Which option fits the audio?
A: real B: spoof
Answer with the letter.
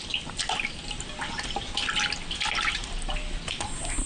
A